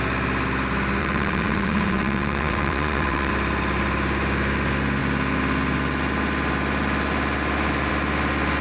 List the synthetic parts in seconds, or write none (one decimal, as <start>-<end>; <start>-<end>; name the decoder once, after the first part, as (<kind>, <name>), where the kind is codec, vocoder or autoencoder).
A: 1.0-3.3 (vocoder, WaveNeXt)